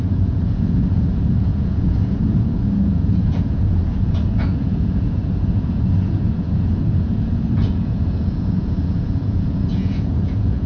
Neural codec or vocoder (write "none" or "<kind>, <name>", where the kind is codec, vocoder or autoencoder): vocoder, Vocos